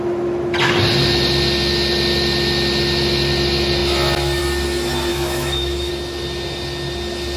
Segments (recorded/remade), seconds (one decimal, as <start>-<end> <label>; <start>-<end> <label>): 0.0-5.1 recorded; 5.1-5.9 remade; 5.9-7.4 recorded